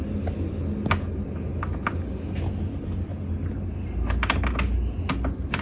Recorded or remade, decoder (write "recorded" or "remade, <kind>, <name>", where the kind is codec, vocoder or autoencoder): recorded